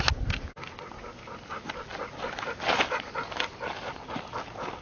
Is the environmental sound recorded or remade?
recorded